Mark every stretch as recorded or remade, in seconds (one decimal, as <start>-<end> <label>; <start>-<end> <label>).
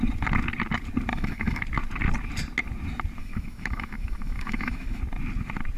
0.0-1.1 recorded; 1.1-1.6 remade; 1.6-3.2 recorded; 3.2-5.0 remade; 5.0-5.8 recorded